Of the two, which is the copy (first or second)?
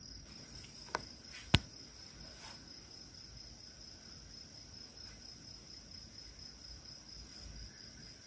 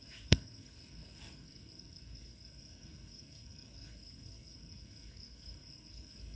second